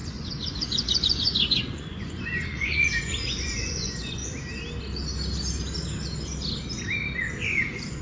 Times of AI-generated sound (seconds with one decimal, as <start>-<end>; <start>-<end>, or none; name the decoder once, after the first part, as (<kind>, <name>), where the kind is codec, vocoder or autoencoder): 0.0-4.2 (vocoder, Vocos); 7.2-8.0